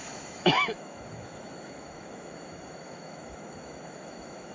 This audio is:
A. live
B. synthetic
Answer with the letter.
B